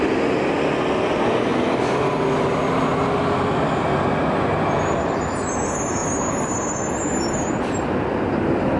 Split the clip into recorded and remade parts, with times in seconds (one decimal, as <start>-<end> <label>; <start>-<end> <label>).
0.0-8.8 recorded